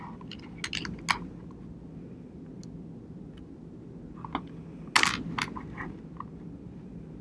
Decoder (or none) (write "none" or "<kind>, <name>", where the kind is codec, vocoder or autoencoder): none